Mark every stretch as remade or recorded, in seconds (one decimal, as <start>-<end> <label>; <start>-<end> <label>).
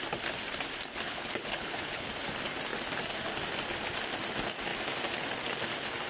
0.0-0.9 recorded; 0.9-2.1 remade; 2.1-6.1 recorded